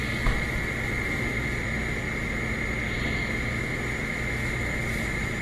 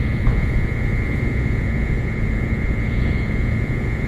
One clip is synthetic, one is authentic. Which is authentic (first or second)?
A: first